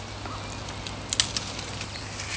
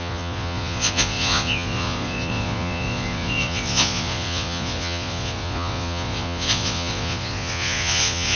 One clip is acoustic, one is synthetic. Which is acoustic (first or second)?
first